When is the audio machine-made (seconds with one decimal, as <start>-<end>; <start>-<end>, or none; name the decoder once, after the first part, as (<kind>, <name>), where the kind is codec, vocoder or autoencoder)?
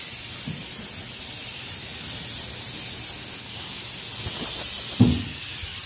0.0-1.9 (vocoder, BigVGAN v2); 5.4-5.9